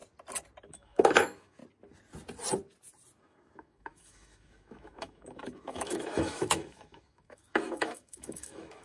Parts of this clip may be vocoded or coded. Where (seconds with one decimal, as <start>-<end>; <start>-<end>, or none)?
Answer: 0.7-1.6; 3.2-8.8

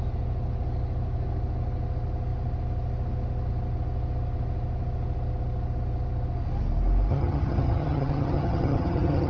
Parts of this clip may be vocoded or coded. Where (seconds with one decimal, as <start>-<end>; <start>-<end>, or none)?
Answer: 7.1-9.3

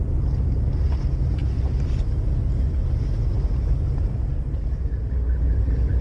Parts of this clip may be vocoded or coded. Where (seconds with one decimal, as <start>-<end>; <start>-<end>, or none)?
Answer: none

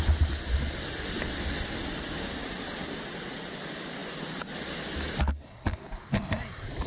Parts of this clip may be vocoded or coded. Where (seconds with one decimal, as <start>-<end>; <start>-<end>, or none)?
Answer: none

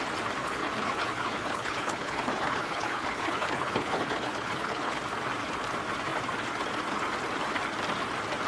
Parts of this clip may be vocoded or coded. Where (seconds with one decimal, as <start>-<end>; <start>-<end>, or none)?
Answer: 0.4-5.0

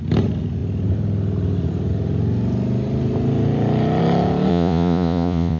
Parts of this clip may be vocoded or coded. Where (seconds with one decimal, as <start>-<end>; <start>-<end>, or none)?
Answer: 4.5-5.6